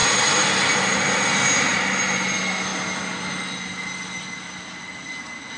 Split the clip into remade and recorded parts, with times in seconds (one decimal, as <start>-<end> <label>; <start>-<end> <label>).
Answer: 0.0-5.6 recorded